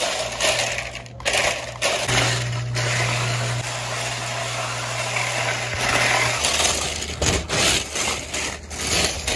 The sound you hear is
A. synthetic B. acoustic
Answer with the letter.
B